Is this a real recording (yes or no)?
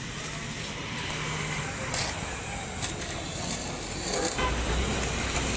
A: yes